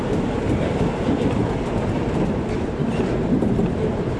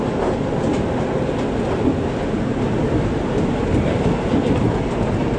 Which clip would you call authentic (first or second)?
second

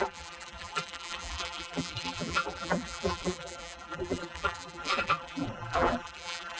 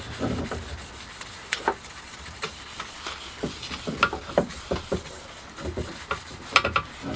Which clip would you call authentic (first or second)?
second